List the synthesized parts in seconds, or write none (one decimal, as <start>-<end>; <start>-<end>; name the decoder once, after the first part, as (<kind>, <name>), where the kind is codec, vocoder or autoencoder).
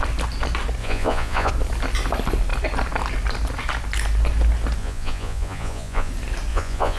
0.8-1.5 (vocoder, Vocos); 4.8-6.1; 6.5-7.0